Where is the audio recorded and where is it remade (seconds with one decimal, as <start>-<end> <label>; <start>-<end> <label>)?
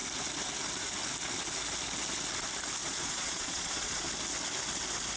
0.0-2.8 recorded; 2.8-4.1 remade; 4.1-5.2 recorded